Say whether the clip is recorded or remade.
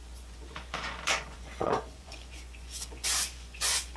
remade